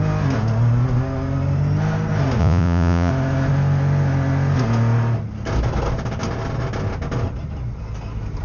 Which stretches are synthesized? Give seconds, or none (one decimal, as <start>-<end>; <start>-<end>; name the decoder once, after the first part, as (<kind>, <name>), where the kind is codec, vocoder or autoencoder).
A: 2.4-3.1 (vocoder, Vocos)